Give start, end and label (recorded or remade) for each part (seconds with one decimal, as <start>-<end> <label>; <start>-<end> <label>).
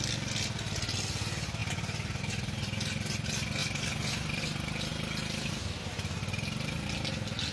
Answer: 0.0-7.5 recorded